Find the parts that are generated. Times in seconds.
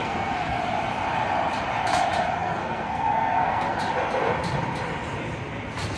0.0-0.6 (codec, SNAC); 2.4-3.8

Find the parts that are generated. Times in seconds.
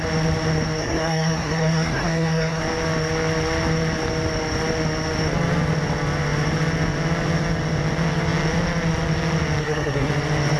0.8-2.6 (codec, SNAC); 9.6-10.1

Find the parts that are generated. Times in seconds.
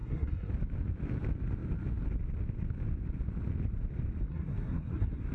0.0-0.5 (codec, SNAC); 4.3-5.3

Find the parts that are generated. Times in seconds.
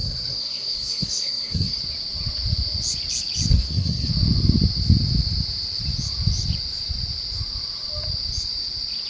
0.0-1.8 (codec, SNAC); 3.5-4.1